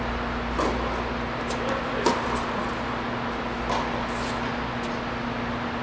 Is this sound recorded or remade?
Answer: recorded